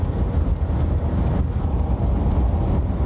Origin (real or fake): real